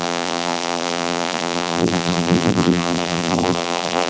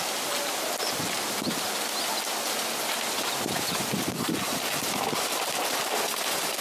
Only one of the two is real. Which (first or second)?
second